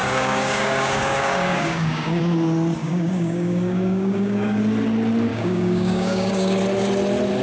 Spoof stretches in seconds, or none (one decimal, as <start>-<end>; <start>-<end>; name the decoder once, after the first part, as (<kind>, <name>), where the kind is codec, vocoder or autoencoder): 0.0-2.2 (codec, DAC); 2.8-4.6; 5.3-6.6